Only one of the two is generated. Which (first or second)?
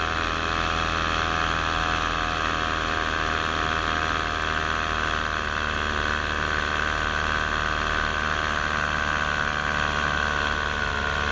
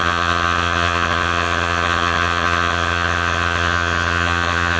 second